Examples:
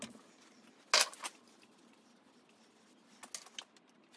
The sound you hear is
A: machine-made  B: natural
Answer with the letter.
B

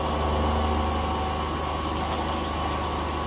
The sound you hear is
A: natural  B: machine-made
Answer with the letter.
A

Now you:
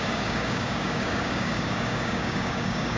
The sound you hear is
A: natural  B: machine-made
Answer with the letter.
B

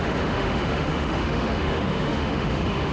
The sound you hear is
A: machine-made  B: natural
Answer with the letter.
A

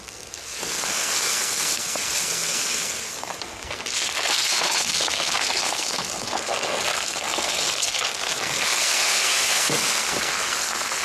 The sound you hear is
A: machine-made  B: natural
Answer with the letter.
A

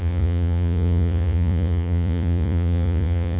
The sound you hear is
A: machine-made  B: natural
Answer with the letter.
A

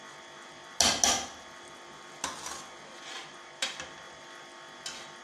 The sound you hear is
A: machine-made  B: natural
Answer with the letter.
B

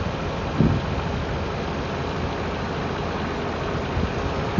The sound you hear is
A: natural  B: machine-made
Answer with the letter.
A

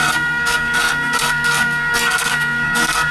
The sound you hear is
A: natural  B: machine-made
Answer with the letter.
B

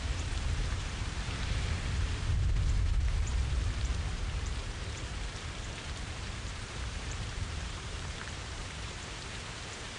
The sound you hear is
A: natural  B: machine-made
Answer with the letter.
B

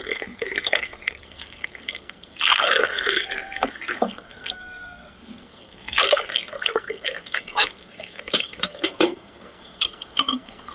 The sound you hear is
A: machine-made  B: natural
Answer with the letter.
A